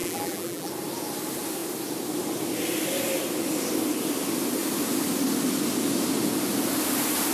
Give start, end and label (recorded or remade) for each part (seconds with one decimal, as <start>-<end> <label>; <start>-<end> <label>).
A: 0.0-0.7 remade; 0.7-7.3 recorded